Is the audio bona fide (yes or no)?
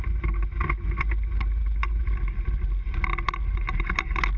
yes